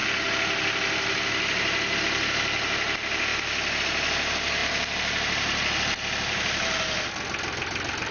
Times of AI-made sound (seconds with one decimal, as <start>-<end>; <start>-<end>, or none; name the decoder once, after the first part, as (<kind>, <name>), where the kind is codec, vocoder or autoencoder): none